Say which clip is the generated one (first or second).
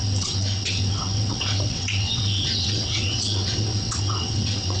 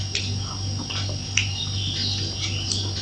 first